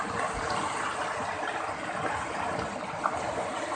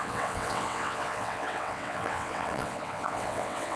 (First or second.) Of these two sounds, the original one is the first